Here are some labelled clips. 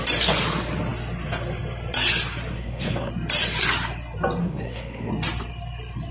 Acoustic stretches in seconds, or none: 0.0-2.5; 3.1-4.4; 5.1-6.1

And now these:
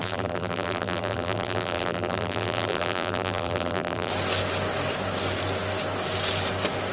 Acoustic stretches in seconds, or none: 4.1-6.9

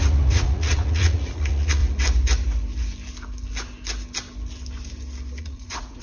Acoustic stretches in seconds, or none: 1.8-5.4